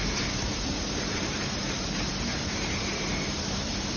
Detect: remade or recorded remade